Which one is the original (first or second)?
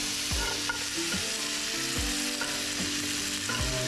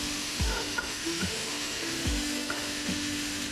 first